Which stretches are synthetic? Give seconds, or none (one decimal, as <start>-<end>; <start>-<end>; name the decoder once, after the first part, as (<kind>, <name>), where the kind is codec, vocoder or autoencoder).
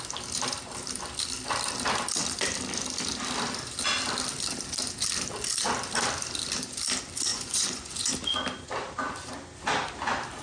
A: 7.3-8.1 (vocoder, Vocos)